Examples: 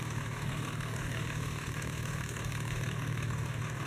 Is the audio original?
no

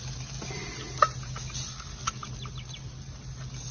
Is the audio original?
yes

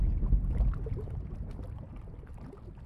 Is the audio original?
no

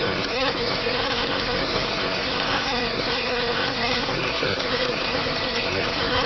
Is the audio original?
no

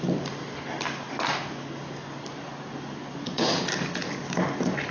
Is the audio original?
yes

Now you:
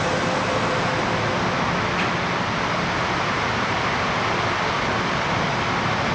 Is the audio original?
yes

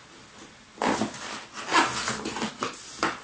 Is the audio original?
yes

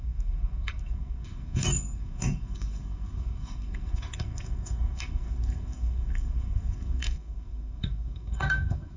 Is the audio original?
no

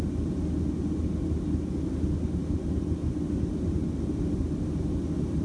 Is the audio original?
yes